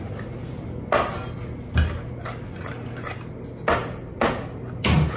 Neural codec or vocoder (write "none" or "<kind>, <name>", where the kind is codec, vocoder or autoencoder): none